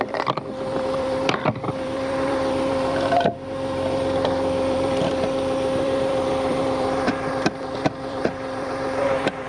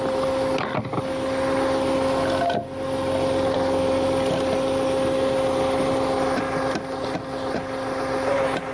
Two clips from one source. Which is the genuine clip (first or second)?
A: second